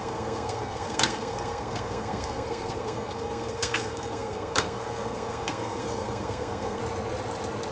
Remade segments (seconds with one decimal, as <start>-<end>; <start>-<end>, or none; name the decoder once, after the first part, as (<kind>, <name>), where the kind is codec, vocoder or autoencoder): 0.0-6.8 (codec, SNAC)